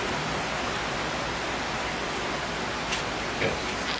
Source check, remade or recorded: recorded